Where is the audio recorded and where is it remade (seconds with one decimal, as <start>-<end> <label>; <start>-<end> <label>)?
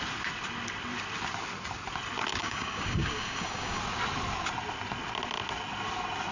0.0-2.4 recorded; 2.4-3.8 remade; 3.8-6.3 recorded